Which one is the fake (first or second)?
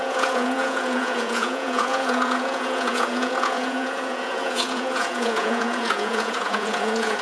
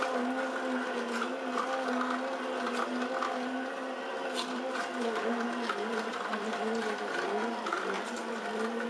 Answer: first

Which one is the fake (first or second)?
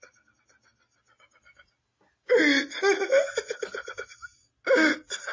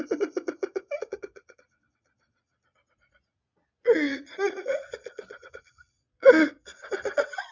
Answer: second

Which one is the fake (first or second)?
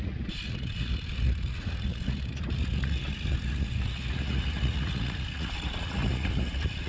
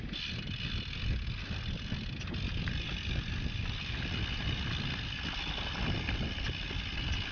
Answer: first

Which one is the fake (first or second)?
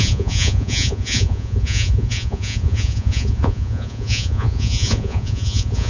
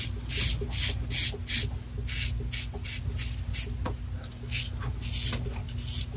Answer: first